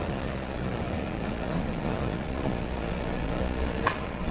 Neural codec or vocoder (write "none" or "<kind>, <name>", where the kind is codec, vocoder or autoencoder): vocoder, Vocos